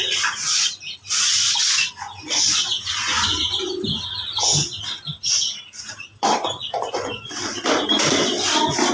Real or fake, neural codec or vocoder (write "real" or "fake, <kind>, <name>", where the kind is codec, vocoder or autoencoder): real